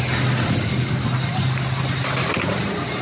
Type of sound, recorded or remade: recorded